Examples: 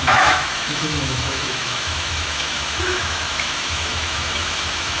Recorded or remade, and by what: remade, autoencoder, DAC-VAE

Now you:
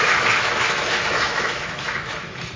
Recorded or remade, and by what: remade, autoencoder, DAC-VAE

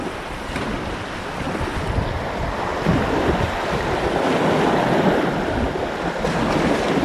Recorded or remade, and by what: recorded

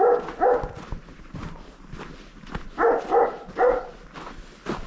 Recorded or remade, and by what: recorded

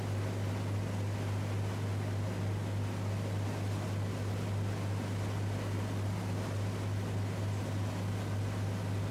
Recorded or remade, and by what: recorded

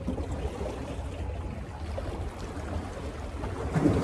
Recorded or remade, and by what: recorded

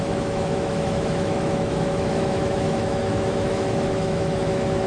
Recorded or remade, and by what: remade, autoencoder, DAC-VAE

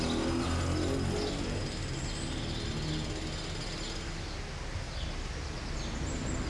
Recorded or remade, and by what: recorded